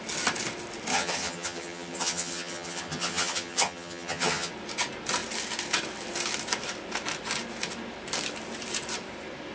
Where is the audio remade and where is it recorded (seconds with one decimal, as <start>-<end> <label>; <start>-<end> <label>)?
0.0-0.9 recorded; 0.9-4.5 remade; 4.5-9.5 recorded